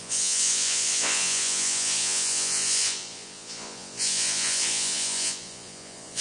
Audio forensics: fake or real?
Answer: fake